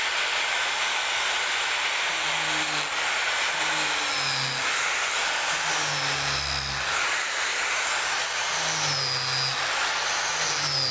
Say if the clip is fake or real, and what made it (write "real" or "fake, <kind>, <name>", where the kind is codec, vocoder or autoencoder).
real